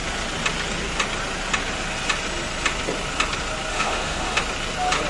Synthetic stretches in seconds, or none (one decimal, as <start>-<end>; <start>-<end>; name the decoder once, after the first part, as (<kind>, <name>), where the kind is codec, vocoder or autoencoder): 3.7-4.4 (autoencoder, DAC-VAE)